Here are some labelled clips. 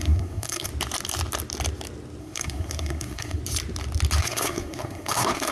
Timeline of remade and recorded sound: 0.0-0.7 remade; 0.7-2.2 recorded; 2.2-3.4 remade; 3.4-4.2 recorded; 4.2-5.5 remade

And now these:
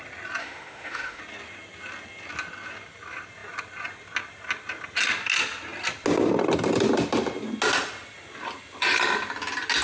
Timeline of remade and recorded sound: 0.0-0.4 recorded; 0.4-1.2 remade; 1.2-9.8 recorded

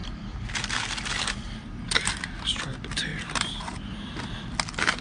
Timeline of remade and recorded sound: 0.0-3.1 recorded; 3.1-4.2 remade; 4.2-5.0 recorded

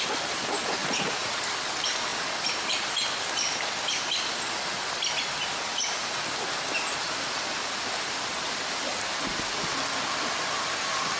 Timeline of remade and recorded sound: 0.0-0.8 recorded; 0.8-1.4 remade; 1.4-11.2 recorded

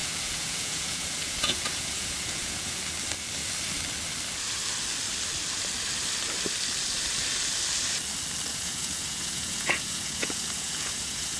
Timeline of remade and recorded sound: 0.0-2.8 remade; 2.8-8.5 recorded; 8.5-11.4 remade

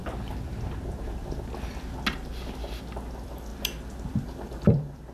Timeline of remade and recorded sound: 0.0-3.1 recorded; 3.1-3.5 remade; 3.5-4.1 recorded; 4.1-5.1 remade

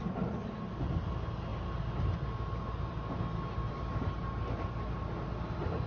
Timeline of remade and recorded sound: 0.0-5.9 recorded